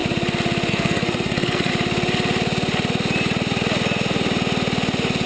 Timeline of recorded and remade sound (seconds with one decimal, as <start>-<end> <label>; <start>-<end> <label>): 0.0-0.7 recorded; 0.7-1.7 remade; 1.7-5.3 recorded